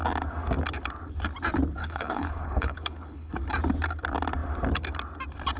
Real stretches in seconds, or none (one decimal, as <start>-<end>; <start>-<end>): 0.0-1.8; 3.3-5.6